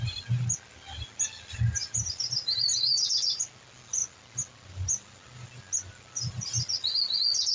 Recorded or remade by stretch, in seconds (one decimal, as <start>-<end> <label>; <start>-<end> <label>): 0.0-1.8 recorded; 1.8-3.4 remade; 3.4-7.5 recorded